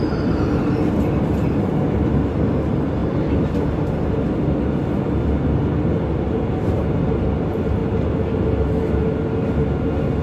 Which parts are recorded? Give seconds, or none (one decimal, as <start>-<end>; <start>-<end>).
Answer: 0.0-3.0; 3.5-10.2